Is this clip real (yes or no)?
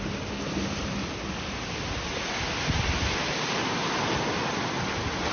yes